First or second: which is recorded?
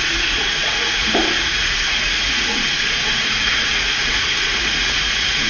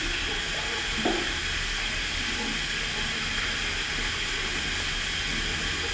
second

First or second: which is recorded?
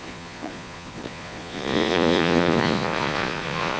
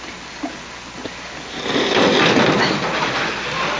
second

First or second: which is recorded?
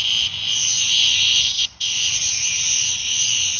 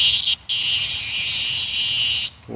second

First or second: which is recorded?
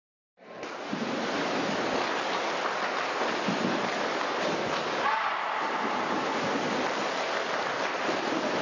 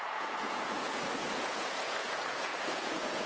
first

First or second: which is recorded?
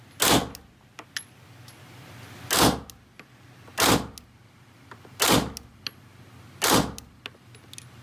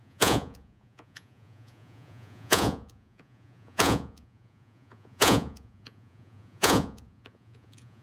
first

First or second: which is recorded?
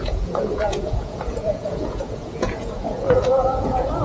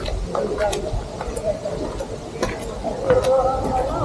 second